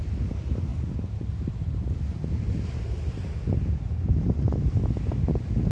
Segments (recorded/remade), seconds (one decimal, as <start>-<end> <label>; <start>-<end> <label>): 0.0-5.7 recorded